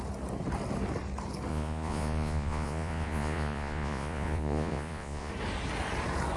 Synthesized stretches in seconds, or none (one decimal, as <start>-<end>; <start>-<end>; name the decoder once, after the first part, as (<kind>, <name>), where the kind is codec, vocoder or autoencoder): 1.5-5.3 (vocoder, Vocos)